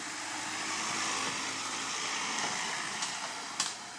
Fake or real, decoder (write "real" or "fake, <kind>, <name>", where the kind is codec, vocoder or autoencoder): fake, vocoder, BigVGAN v2